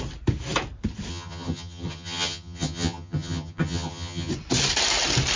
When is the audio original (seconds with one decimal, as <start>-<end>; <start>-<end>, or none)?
0.0-1.1; 4.3-5.4